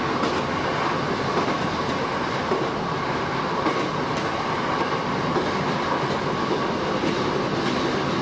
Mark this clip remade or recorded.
recorded